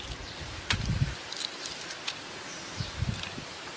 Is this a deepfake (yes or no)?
no